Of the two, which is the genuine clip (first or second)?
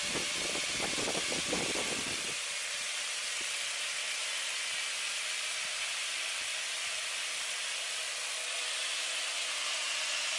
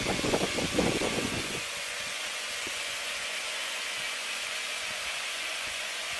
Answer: first